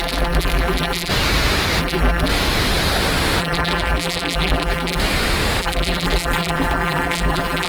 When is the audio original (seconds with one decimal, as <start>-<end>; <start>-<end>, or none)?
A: 1.1-1.8; 2.3-3.4; 5.0-5.6